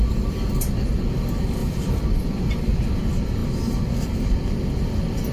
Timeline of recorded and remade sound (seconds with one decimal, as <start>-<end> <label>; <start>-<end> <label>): 0.0-1.6 recorded; 1.6-3.0 remade; 3.0-5.3 recorded